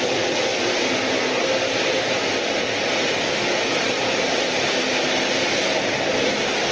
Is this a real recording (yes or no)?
yes